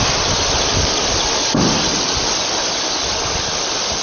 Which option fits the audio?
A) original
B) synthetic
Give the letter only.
A